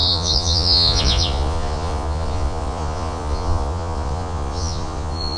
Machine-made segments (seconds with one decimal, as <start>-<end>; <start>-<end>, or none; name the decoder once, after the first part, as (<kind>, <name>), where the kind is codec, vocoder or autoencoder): 0.0-5.4 (vocoder, Vocos)